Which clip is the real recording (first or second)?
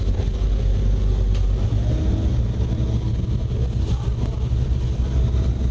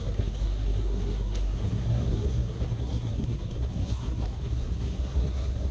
first